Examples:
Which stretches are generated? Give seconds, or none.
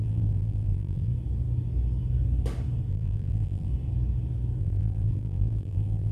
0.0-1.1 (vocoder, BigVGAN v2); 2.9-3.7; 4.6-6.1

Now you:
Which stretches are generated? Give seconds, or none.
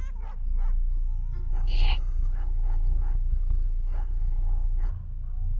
1.5-4.9 (codec, SNAC)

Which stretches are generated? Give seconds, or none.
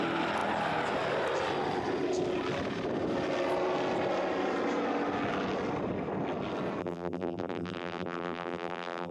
6.8-9.1 (vocoder, BigVGAN v2)